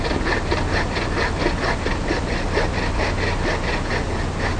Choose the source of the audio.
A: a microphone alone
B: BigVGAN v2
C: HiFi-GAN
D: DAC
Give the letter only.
A